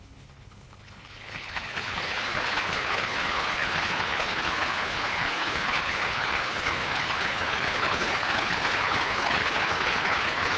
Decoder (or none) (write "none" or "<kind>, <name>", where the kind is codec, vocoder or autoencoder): codec, HILCodec